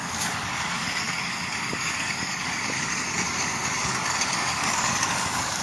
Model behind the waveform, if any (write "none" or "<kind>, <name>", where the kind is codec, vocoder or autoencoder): codec, DAC